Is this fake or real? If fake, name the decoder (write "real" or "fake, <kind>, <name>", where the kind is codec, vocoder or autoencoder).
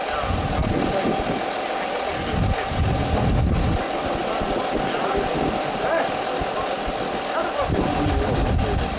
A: real